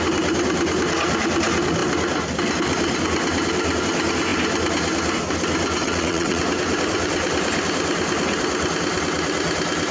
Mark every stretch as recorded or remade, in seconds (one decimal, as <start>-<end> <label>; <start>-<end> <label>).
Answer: 0.0-5.8 recorded; 5.8-6.4 remade; 6.4-9.9 recorded